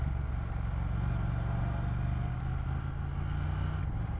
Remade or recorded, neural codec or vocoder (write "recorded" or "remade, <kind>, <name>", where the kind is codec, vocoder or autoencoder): recorded